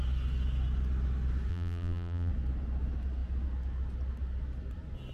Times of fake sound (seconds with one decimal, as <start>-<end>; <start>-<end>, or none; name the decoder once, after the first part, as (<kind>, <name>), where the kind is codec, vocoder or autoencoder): 1.5-2.3 (vocoder, BigVGAN v2)